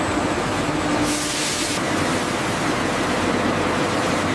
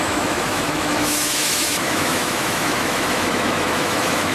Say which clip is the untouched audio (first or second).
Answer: first